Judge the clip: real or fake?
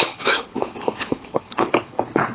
fake